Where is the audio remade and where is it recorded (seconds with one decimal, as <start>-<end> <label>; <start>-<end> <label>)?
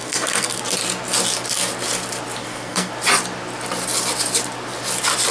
0.0-0.6 remade; 0.6-2.4 recorded; 2.4-2.9 remade; 2.9-5.3 recorded